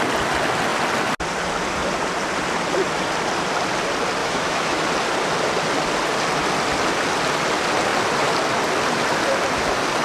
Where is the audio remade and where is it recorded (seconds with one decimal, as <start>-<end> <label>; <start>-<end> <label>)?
0.0-4.2 recorded; 4.2-4.8 remade; 4.8-10.0 recorded